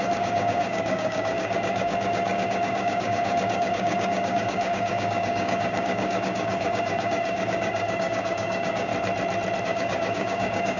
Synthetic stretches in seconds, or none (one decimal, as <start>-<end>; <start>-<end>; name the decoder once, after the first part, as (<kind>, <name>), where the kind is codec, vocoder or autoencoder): 0.0-8.9 (codec, DAC); 9.6-10.8